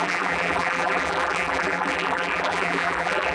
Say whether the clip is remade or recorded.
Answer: remade